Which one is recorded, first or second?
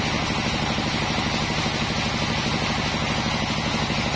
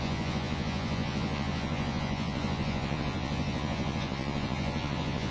first